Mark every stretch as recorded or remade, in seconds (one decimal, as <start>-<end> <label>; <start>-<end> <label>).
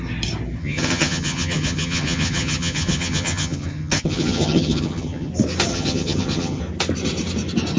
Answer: 0.0-0.6 recorded; 0.6-5.3 remade; 5.3-5.7 recorded; 5.7-6.6 remade; 6.6-7.8 recorded